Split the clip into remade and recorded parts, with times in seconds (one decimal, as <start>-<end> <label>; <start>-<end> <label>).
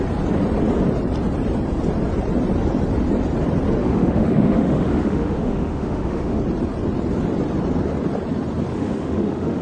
0.0-3.8 recorded; 3.8-6.4 remade; 6.4-8.7 recorded; 8.7-9.6 remade